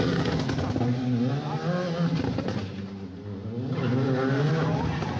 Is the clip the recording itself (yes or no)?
yes